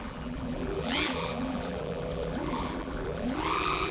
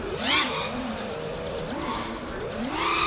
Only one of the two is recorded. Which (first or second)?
second